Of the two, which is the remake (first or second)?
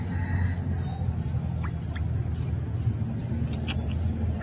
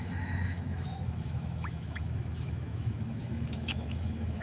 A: second